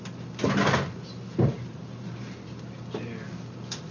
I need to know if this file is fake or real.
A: real